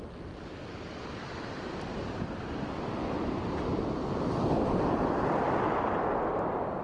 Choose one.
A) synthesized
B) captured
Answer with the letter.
B